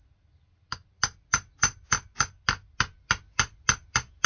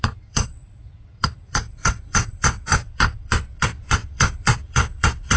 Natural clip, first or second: first